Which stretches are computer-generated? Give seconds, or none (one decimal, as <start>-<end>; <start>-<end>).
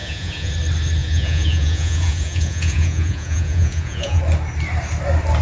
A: 0.0-0.5; 1.0-4.2